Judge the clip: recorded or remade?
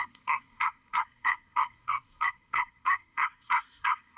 remade